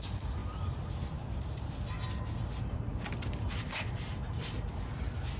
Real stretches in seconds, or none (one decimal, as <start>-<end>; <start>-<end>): 0.0-5.4